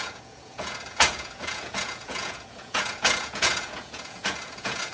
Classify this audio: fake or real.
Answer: fake